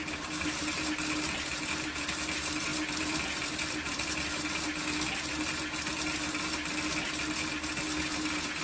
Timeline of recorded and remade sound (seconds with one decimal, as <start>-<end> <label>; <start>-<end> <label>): 0.0-2.7 recorded; 2.7-4.0 remade; 4.0-8.6 recorded